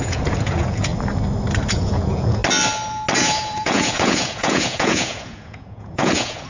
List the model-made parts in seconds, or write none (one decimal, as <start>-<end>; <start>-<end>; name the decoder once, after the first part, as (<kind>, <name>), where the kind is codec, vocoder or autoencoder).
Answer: 0.0-0.9 (vocoder, Vocos); 1.8-2.4; 3.2-6.5